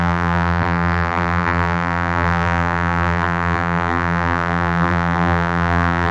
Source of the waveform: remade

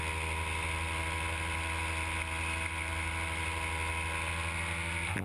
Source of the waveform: recorded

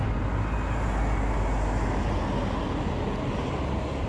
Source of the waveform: recorded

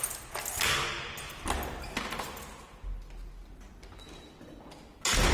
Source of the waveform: recorded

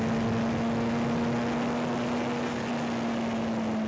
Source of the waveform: recorded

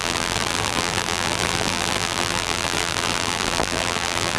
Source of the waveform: remade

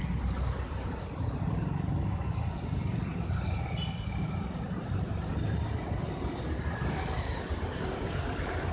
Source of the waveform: recorded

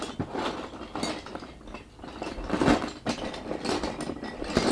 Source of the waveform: recorded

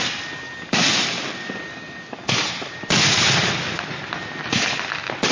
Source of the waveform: recorded